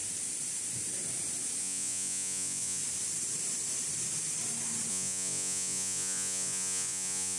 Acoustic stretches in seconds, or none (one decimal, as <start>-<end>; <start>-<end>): 0.0-1.6; 2.8-4.9

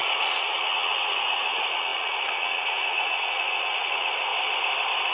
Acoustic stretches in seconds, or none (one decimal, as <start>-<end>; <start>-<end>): 4.3-5.1

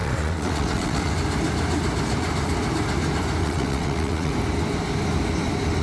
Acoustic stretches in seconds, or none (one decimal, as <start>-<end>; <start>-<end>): 1.1-3.4; 4.3-5.8

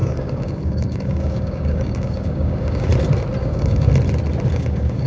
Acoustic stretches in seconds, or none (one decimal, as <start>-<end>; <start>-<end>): 2.9-3.4; 3.9-4.5

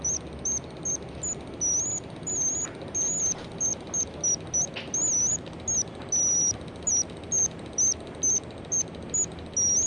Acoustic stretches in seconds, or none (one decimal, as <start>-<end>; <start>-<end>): 0.0-9.9

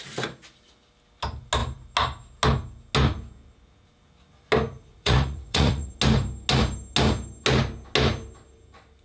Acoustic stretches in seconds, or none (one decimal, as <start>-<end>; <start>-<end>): 0.0-4.9; 5.9-9.0

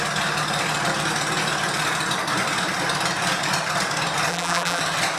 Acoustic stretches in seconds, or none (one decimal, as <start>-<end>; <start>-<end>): 0.0-4.3; 4.8-5.2

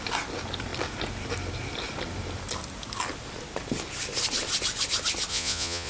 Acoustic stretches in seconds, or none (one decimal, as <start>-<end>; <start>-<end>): 0.0-5.3